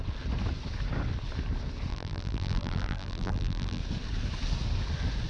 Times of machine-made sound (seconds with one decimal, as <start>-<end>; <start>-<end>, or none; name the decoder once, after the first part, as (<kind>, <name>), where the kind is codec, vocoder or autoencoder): 1.9-3.8 (vocoder, BigVGAN v2)